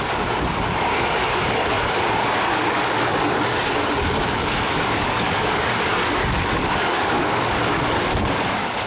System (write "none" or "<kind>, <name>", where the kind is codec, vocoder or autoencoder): codec, DAC